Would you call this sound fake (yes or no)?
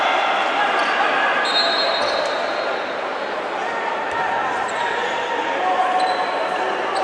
no